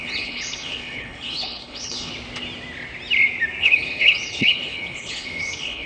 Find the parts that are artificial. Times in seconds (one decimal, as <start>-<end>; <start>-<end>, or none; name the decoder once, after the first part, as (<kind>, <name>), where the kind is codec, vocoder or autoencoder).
0.0-2.1 (codec, HILCodec); 3.6-5.9